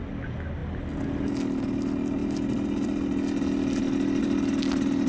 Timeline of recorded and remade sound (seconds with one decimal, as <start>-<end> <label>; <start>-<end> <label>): 0.0-5.1 recorded

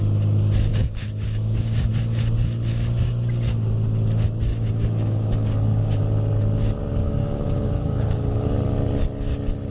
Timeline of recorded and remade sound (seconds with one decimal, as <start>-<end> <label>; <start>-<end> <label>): 0.0-0.7 recorded; 0.7-1.9 remade; 1.9-4.5 recorded; 4.5-6.0 remade; 6.0-7.0 recorded; 7.0-8.5 remade; 8.5-9.7 recorded

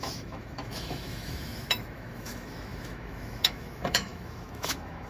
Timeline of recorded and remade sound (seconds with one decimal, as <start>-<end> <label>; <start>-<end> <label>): 0.0-5.1 remade

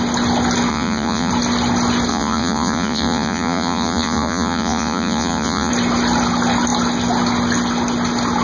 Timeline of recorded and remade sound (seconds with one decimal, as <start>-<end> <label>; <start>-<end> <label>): 0.0-0.7 recorded; 0.7-1.3 remade; 1.3-2.1 recorded; 2.1-5.7 remade; 5.7-8.4 recorded

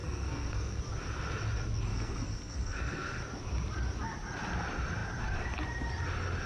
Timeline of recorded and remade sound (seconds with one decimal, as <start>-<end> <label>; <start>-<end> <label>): 0.0-0.8 remade; 0.8-1.9 recorded; 1.9-3.2 remade; 3.2-6.5 recorded